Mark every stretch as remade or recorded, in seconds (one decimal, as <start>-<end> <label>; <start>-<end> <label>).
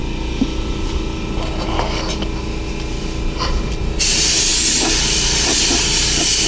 0.0-6.5 recorded